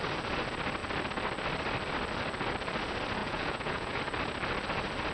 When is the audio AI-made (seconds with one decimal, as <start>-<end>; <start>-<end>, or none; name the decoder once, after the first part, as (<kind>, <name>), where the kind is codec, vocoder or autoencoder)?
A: 3.2-4.0 (vocoder, Vocos)